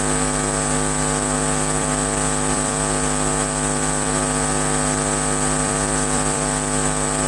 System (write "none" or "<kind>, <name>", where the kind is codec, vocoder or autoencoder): vocoder, BigVGAN v2